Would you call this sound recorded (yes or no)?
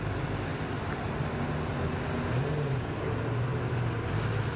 yes